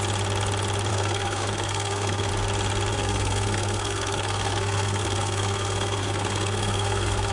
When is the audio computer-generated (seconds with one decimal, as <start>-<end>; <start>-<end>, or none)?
0.9-2.3; 2.9-7.3